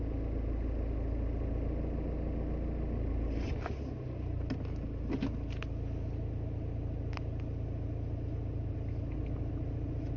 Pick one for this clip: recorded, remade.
recorded